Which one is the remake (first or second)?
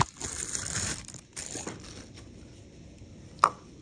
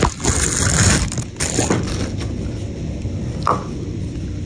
first